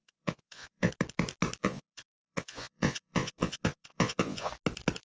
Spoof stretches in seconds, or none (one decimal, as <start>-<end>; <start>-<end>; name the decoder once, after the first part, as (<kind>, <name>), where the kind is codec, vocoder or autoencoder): 0.0-0.9 (vocoder, Vocos); 1.6-4.5